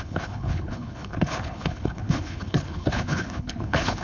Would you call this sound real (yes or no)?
no